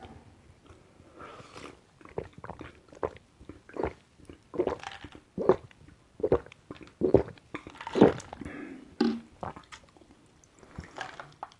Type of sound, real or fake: fake